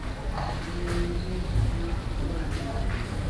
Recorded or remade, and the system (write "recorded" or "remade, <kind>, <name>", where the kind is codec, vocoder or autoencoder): recorded